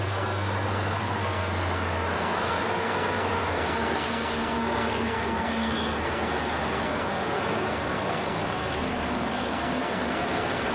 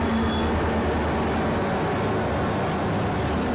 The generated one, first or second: first